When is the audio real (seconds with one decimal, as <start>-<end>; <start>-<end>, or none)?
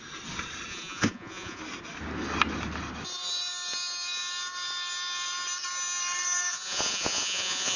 0.0-0.7; 1.6-6.5